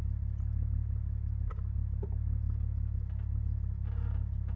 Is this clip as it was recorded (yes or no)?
yes